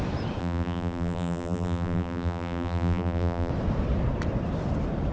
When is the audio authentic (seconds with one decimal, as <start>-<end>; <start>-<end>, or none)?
0.0-0.4; 3.5-5.1